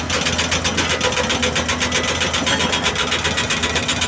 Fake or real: real